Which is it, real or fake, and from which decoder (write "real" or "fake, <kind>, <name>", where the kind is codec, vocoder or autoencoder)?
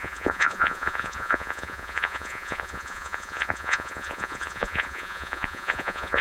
fake, vocoder, Vocos